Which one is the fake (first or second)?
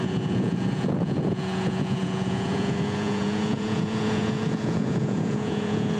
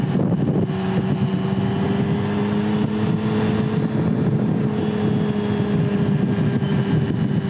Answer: first